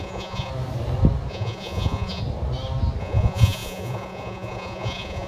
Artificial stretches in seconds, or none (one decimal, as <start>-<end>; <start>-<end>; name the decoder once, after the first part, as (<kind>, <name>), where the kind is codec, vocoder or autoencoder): 0.0-0.5 (vocoder, Vocos); 1.3-2.2; 3.0-5.3